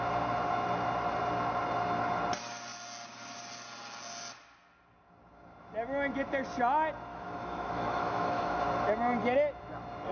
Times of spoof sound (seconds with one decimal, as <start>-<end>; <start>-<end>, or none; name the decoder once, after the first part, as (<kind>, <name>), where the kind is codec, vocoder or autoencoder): 7.1-8.6 (autoencoder, DAC-VAE)